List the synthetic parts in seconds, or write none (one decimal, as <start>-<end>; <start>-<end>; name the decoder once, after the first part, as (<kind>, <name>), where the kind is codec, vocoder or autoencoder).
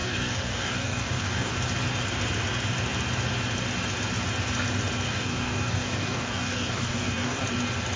0.0-1.5 (codec, DAC); 5.1-7.4